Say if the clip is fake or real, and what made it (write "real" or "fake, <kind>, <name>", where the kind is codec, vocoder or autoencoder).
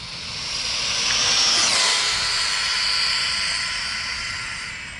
real